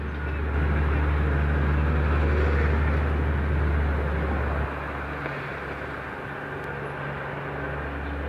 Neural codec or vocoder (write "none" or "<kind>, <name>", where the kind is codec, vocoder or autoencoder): none